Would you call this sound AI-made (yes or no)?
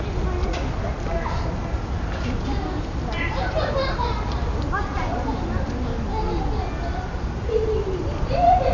no